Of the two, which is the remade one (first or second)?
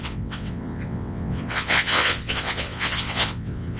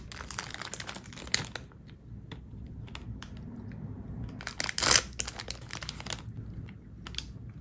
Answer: first